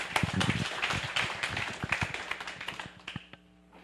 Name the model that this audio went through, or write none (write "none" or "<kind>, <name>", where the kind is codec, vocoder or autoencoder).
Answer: none